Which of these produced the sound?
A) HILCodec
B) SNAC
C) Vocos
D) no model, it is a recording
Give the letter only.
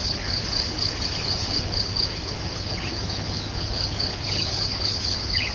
A